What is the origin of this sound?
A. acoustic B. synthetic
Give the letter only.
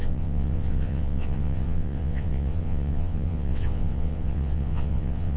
B